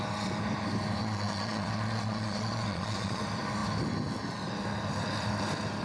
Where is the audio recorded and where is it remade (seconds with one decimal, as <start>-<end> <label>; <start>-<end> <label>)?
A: 0.0-1.0 recorded; 1.0-3.2 remade; 3.2-5.8 recorded